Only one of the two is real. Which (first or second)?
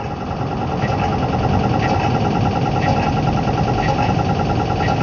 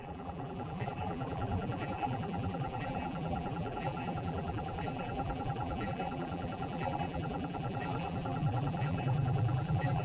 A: first